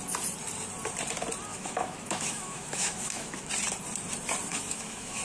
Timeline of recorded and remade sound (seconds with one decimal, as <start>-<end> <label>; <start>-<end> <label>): 0.0-1.5 recorded; 1.5-3.5 remade; 3.5-4.5 recorded; 4.5-5.2 remade